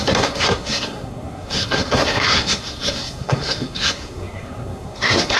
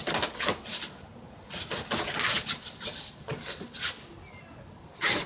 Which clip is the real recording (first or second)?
second